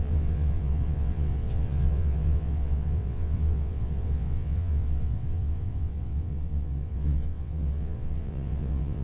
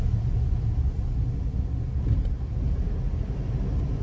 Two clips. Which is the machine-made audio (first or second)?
first